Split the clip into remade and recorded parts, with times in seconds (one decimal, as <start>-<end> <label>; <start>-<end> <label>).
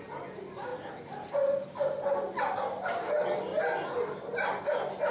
0.0-5.1 recorded